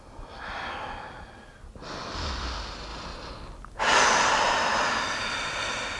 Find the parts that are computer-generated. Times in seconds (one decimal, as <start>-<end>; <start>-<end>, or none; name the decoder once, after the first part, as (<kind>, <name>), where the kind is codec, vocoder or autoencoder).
none